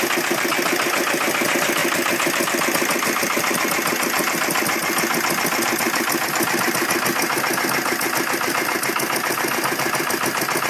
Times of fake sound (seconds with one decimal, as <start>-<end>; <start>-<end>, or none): none